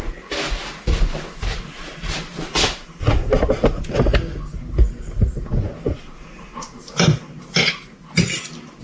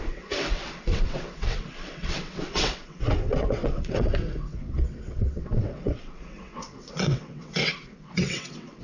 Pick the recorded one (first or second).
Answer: first